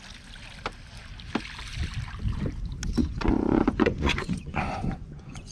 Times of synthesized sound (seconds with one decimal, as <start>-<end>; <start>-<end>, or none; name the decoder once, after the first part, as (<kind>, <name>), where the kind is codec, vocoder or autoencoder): 3.0-5.5 (vocoder, Vocos)